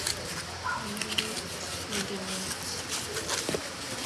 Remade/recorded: recorded